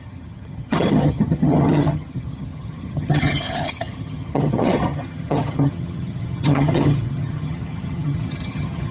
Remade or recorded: remade